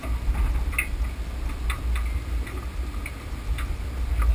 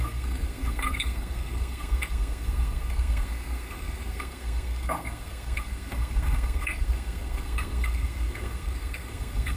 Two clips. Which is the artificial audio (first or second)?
second